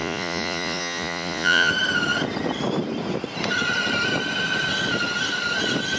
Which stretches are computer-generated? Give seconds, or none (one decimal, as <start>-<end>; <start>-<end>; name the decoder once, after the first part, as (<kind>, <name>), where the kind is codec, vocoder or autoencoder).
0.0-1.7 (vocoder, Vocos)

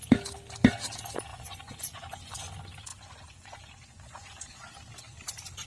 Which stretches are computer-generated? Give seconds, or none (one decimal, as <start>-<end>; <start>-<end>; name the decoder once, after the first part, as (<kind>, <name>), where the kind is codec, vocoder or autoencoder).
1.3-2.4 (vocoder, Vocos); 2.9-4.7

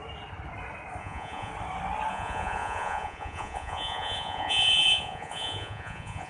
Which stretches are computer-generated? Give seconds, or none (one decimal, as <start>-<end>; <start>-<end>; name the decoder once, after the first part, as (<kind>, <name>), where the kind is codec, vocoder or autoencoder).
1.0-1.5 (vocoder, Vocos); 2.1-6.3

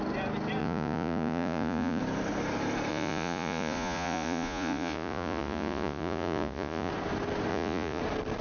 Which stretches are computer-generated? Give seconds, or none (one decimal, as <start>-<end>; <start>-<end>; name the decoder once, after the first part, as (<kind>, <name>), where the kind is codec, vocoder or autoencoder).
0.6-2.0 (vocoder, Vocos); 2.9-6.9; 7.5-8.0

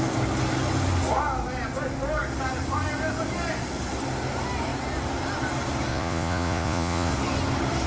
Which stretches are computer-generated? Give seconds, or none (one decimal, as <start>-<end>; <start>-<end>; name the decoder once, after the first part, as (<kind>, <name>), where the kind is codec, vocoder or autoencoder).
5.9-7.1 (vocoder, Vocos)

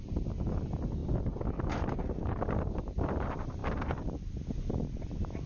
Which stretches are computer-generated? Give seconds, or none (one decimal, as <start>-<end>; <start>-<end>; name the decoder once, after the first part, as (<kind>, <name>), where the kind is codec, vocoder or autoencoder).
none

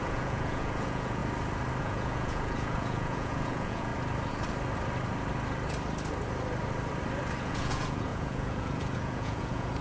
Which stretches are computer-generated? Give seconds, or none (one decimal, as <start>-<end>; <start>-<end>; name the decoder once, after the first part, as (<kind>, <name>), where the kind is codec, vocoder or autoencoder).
0.0-1.2 (vocoder, Vocos); 1.8-3.9; 7.4-9.8

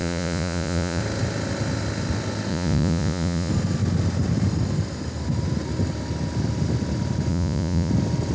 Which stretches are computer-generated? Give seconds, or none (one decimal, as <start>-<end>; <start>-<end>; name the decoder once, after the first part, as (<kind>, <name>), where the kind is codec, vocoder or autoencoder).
0.0-1.0 (vocoder, Vocos); 2.5-3.5; 7.3-7.9